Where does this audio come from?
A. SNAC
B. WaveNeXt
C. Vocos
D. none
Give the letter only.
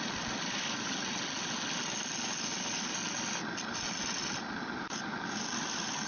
D